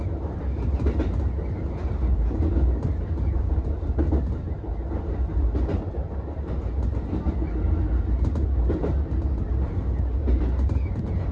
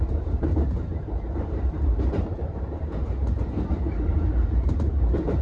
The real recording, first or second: first